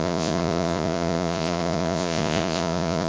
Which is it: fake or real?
fake